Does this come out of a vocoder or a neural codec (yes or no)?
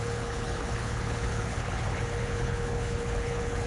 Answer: yes